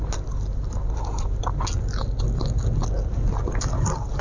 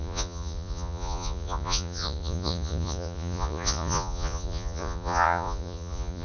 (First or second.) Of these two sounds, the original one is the first